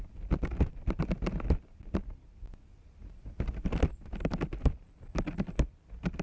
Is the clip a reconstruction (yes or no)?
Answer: no